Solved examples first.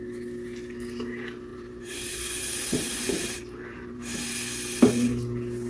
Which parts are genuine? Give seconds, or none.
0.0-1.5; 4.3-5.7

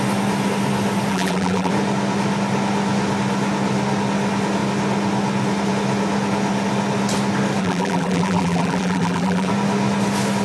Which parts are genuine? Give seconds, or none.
0.0-1.1; 1.7-7.6; 9.5-10.4

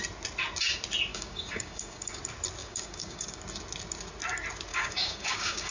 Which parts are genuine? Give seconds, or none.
0.0-1.1; 2.2-2.6; 3.4-4.7

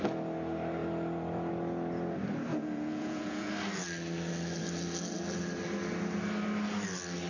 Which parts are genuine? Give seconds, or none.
0.0-2.5; 3.5-7.3

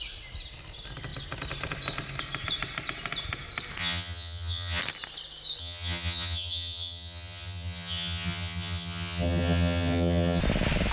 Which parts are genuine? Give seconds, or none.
0.0-3.8; 4.8-5.6; 10.4-10.9

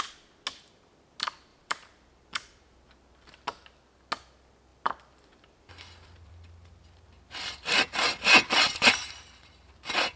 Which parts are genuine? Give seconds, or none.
0.0-1.5; 2.8-4.7; 9.7-10.2